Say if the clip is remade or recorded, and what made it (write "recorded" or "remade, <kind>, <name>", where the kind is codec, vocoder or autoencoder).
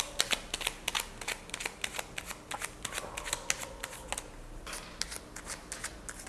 recorded